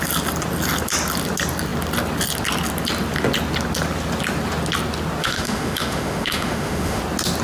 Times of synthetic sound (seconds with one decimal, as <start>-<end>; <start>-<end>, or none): 5.2-7.0